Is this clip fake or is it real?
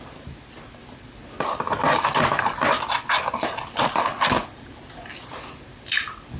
real